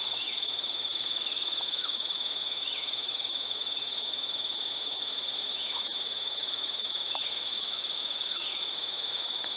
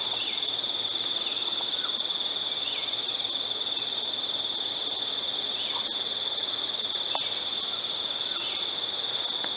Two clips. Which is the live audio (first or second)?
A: second